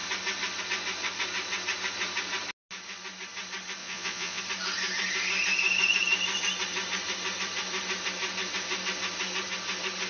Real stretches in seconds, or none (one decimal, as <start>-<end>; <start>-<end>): 0.0-3.8; 4.4-10.1